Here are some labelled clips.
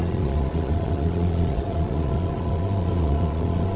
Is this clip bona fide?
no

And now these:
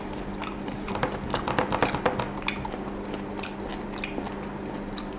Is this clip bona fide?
yes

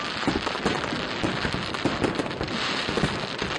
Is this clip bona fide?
yes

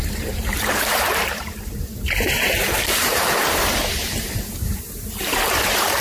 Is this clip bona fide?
no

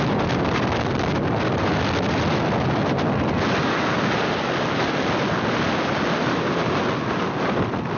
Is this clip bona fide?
yes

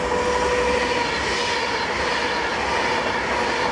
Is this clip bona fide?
yes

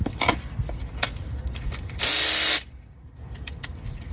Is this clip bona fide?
yes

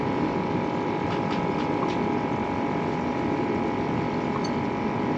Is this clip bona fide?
yes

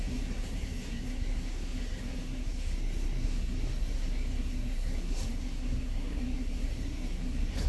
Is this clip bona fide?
no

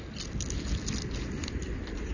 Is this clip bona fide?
yes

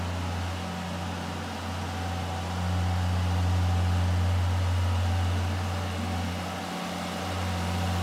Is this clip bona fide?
yes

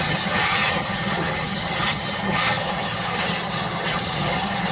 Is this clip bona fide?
no